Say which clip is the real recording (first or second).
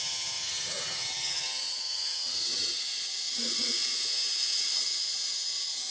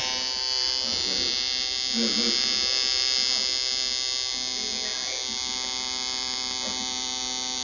second